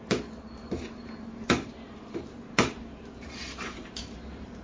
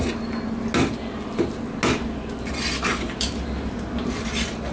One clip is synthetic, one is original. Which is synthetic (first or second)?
first